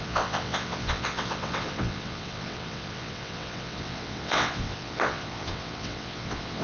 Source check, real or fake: fake